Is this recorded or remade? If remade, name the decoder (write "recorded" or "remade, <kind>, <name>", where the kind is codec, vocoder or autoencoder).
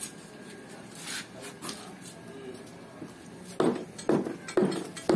recorded